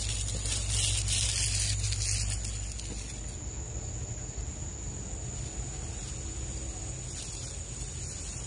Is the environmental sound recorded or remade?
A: recorded